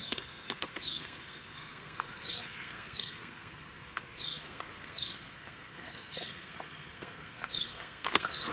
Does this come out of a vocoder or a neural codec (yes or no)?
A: yes